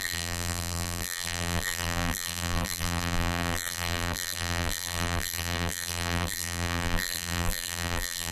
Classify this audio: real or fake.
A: fake